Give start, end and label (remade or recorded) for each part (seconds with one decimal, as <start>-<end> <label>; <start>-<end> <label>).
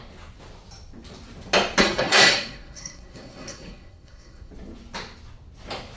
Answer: 0.0-1.8 recorded; 1.8-4.5 remade; 4.5-6.0 recorded